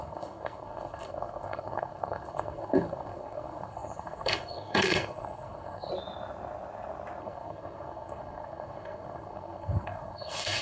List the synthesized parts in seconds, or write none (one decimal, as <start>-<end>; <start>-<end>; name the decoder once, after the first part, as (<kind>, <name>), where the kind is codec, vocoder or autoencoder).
0.0-5.9 (codec, SNAC); 7.2-10.6